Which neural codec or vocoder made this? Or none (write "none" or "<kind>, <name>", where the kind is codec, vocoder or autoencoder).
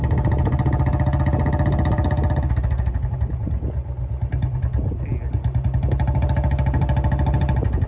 none